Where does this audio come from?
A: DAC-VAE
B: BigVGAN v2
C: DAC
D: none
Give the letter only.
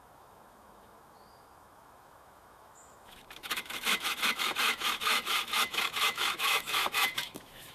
A